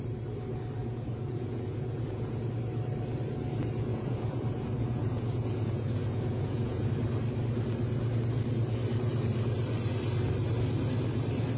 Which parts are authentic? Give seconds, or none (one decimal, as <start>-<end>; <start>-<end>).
0.0-0.8; 2.5-3.9; 6.9-11.6